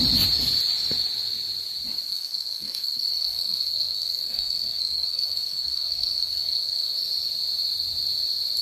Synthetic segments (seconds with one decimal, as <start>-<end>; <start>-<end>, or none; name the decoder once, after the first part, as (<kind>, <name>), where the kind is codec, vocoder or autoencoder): 2.1-6.9 (codec, SNAC)